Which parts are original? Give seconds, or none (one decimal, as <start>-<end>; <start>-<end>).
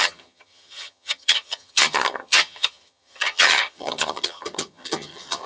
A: none